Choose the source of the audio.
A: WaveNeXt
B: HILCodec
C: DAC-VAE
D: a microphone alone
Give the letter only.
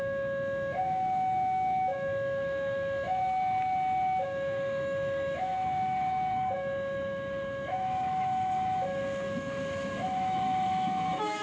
C